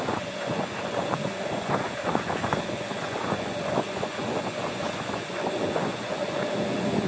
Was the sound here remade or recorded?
remade